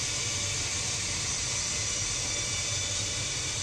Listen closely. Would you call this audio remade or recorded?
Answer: recorded